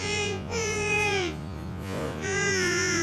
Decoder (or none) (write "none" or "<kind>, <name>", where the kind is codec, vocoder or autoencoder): vocoder, Vocos